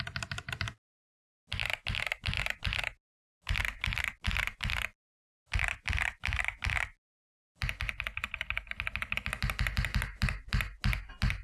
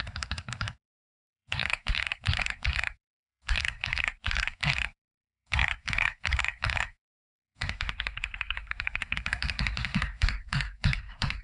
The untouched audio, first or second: first